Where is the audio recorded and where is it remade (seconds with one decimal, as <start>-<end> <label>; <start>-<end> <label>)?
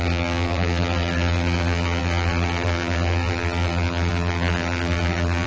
0.0-5.5 remade